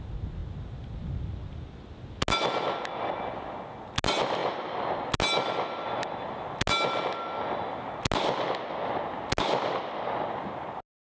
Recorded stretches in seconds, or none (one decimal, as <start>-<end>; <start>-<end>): 0.0-11.1